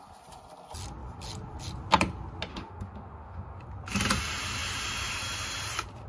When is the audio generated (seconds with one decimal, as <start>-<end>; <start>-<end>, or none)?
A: 2.5-3.6